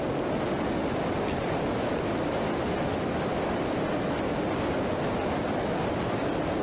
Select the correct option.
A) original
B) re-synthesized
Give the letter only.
A